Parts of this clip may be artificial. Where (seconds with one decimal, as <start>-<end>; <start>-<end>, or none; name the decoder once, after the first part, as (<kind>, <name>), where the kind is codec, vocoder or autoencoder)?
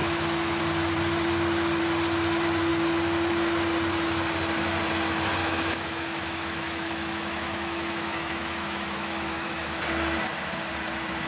0.0-0.6 (autoencoder, DAC-VAE); 5.4-9.8